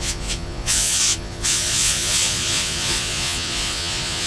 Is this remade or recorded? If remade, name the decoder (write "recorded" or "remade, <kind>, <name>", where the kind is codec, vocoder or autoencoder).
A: remade, vocoder, Vocos